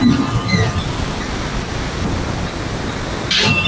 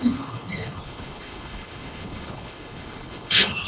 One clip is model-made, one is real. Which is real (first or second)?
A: first